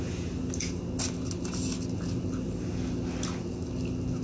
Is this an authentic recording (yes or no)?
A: yes